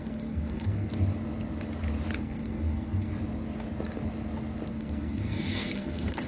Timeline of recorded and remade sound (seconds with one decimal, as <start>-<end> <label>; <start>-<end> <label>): 0.0-0.9 remade; 0.9-2.2 recorded; 2.2-3.1 remade; 3.1-4.7 recorded; 4.7-6.3 remade